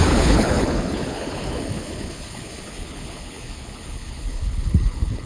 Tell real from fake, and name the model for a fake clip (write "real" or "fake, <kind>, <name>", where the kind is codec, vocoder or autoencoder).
fake, codec, HILCodec